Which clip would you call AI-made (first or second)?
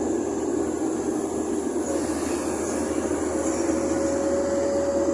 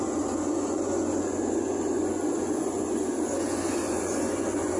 second